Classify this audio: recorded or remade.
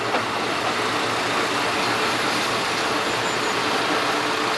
recorded